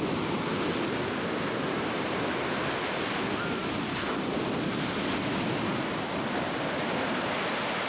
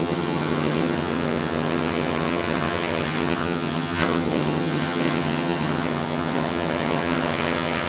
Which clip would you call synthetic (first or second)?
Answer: second